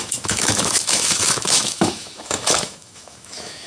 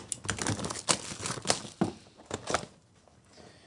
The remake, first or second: first